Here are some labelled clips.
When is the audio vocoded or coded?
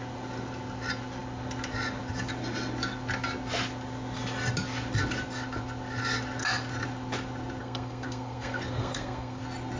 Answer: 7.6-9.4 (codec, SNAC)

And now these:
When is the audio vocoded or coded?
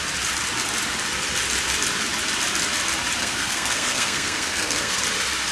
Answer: 3.2-5.0 (codec, SNAC)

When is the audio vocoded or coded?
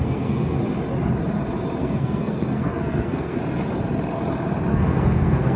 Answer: 0.0-0.6 (codec, SNAC); 1.8-3.4; 4.7-5.6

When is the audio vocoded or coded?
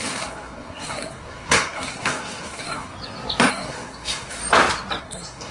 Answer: 0.0-2.9 (codec, SNAC); 3.5-4.4; 5.0-5.5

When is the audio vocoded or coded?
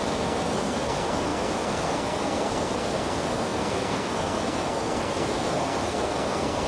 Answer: 0.0-6.7 (codec, SNAC)